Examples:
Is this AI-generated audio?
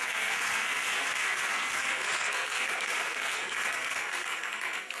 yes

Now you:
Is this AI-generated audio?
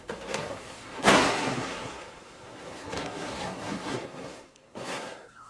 yes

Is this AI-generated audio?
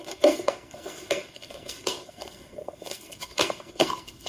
yes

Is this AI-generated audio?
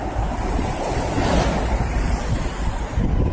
no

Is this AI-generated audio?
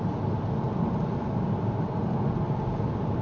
no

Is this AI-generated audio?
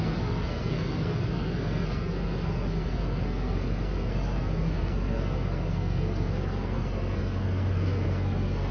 yes